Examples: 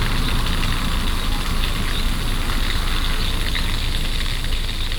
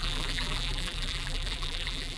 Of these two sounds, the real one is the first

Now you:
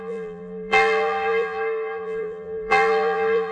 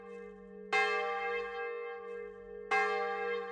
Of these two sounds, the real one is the second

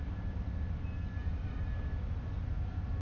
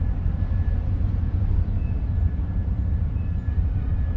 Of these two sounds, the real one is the first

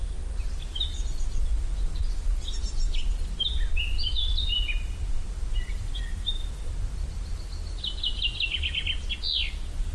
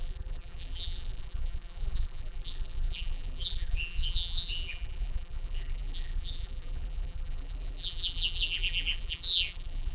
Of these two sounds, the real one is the first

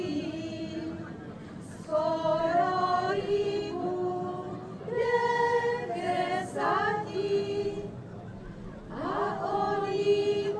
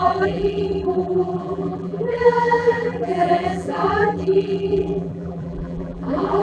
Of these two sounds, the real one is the first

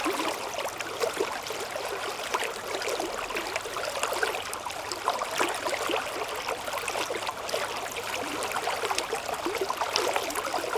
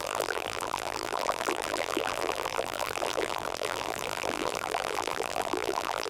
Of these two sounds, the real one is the first